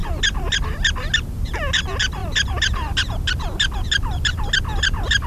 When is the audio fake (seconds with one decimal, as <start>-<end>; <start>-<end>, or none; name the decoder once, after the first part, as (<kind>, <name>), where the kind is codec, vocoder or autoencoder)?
0.0-0.6 (vocoder, BigVGAN v2); 2.2-4.4